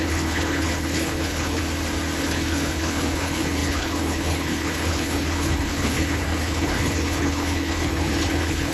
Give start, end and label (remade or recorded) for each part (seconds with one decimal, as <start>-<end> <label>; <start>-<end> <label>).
0.0-1.6 remade; 1.6-2.2 recorded; 2.2-8.7 remade